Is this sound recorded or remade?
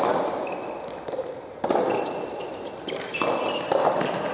recorded